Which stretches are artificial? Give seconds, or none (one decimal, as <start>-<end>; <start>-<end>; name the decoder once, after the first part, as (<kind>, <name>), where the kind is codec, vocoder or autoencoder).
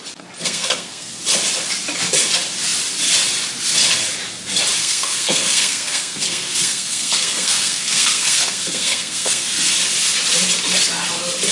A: 0.4-1.2 (codec, SNAC); 4.8-9.7